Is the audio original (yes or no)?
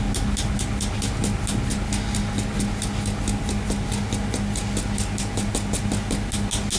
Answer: yes